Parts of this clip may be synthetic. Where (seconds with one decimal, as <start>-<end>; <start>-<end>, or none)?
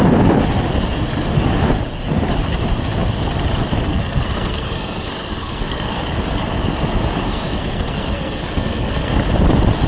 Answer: 3.9-6.0; 7.2-9.2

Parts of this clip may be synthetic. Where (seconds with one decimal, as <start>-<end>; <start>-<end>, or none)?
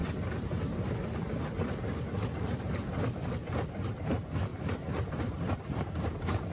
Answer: 1.6-6.5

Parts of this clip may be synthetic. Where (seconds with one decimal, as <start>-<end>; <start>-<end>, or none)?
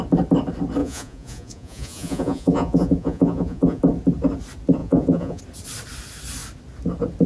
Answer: 0.8-3.8; 4.8-5.4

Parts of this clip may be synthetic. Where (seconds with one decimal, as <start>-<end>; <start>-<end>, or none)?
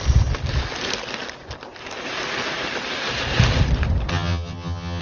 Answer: 4.1-5.0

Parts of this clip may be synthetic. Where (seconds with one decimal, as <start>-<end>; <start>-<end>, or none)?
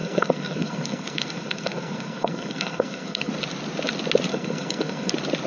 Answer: 0.0-3.3; 4.3-5.1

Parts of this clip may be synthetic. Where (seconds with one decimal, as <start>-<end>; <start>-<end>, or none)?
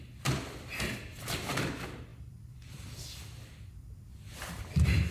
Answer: 1.1-1.7; 2.1-3.4; 4.1-4.6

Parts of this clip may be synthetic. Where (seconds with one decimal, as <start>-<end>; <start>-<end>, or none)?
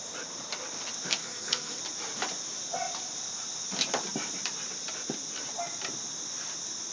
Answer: 1.2-1.8